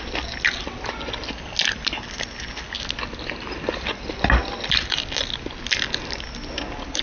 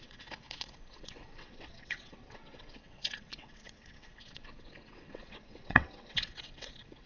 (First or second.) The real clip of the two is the first